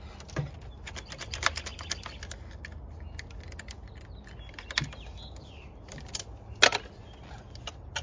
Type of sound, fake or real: real